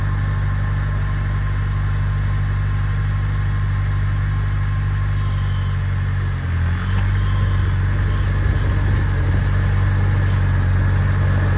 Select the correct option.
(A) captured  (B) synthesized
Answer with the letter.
A